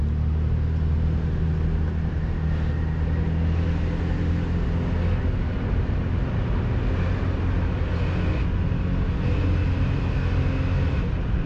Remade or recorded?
recorded